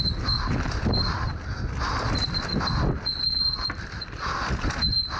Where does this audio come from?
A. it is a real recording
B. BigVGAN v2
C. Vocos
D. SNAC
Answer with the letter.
A